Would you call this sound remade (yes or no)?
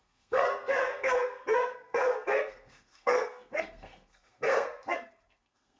yes